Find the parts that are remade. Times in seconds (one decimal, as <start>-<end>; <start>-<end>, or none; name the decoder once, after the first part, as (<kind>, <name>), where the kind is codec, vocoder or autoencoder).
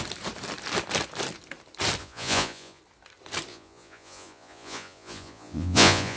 2.0-2.8 (vocoder, Vocos); 3.5-6.2